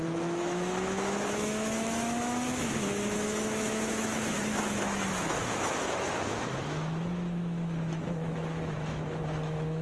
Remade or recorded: remade